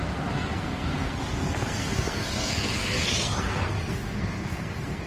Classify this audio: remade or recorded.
remade